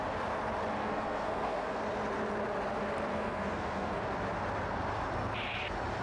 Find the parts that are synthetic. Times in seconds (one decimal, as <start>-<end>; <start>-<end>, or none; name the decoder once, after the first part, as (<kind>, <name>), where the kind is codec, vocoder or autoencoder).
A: 0.8-1.8 (codec, SNAC); 3.1-4.0